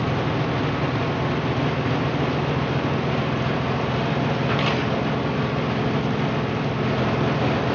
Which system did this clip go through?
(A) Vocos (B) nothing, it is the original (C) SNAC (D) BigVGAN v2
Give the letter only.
B